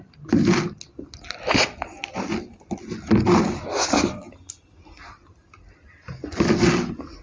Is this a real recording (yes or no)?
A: yes